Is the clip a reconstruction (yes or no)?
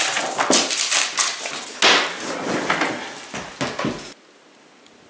no